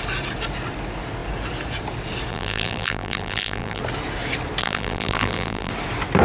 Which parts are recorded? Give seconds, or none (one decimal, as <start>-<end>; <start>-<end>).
0.0-2.3; 3.8-4.6; 5.7-6.2

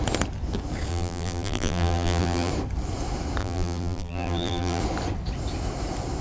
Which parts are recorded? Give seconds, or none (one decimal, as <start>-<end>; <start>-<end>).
0.0-0.9; 2.5-3.4; 4.8-6.2

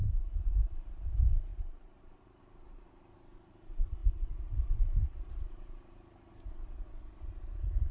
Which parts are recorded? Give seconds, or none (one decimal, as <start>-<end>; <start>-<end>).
0.8-1.5; 2.4-4.0; 6.3-7.9